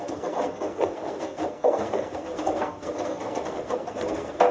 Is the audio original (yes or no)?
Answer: no